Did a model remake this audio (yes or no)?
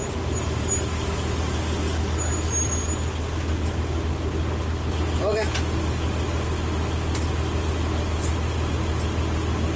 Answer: no